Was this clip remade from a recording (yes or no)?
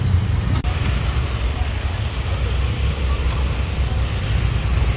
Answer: no